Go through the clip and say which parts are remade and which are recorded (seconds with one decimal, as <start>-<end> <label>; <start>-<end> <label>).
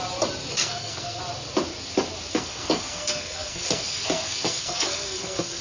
0.0-0.5 recorded; 0.5-1.2 remade; 1.2-2.3 recorded; 2.3-5.6 remade